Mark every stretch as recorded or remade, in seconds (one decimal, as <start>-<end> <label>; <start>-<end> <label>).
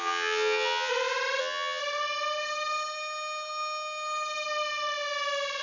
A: 0.0-0.9 remade; 0.9-1.4 recorded; 1.4-1.8 remade; 1.8-5.6 recorded